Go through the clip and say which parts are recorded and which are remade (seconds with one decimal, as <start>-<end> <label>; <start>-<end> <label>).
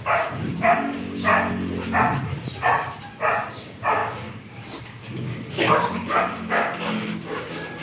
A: 0.0-1.3 remade; 1.3-3.5 recorded; 3.5-7.8 remade